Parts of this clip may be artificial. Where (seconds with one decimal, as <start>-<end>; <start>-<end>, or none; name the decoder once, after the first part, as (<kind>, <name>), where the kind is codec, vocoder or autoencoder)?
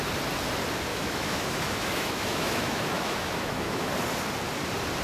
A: 0.9-3.9 (autoencoder, DAC-VAE)